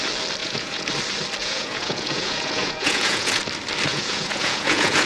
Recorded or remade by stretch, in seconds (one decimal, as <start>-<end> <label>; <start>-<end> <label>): 0.0-0.4 recorded; 0.4-0.9 remade; 0.9-1.4 recorded; 1.4-3.4 remade; 3.4-3.9 recorded; 3.9-5.1 remade